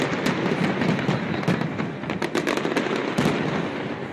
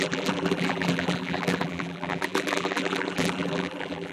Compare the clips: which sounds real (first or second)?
first